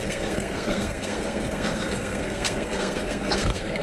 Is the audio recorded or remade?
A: remade